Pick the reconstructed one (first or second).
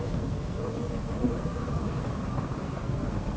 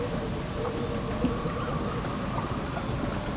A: first